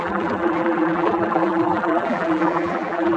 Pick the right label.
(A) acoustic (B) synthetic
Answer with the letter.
B